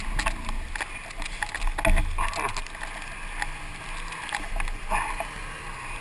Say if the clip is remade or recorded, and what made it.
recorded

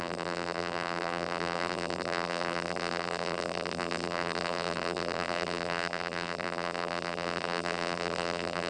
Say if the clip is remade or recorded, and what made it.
remade, vocoder, BigVGAN v2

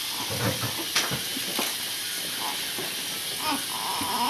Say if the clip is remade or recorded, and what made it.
recorded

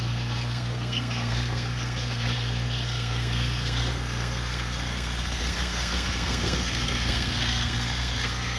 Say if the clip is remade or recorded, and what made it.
remade, codec, SNAC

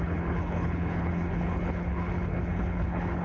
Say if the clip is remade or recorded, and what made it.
remade, codec, HILCodec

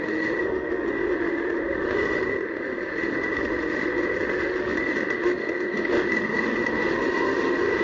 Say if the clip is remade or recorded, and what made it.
remade, autoencoder, DAC-VAE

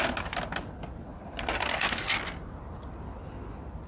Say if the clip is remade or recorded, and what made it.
recorded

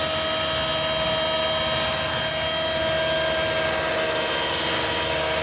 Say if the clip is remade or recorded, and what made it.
recorded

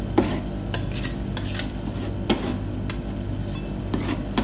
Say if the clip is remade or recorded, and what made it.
recorded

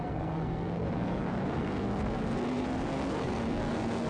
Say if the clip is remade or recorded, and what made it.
remade, codec, SNAC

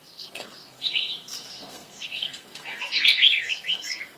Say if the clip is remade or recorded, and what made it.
remade, codec, SNAC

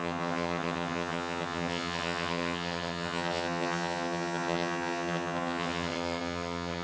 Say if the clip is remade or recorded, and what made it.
remade, vocoder, HiFi-GAN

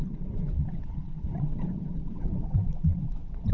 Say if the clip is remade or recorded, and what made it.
remade, vocoder, WaveNeXt